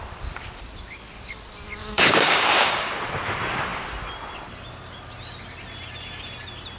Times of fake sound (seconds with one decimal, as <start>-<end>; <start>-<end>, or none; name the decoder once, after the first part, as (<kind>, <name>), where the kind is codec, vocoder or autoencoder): 1.8-2.9 (codec, DAC)